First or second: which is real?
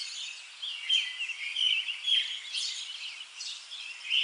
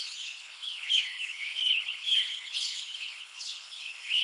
first